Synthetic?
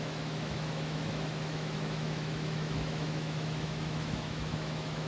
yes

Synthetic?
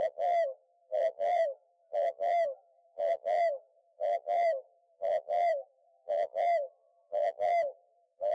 yes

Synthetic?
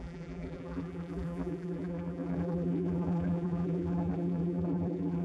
yes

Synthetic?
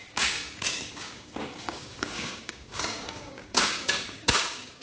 yes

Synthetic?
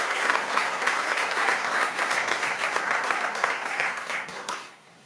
yes